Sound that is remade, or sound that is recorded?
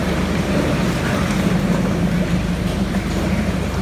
remade